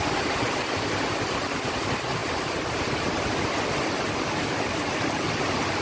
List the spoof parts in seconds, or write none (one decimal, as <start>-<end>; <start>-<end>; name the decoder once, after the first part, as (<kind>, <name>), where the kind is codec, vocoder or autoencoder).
none